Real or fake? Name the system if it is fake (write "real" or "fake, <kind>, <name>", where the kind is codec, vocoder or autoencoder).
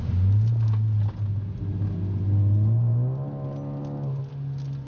real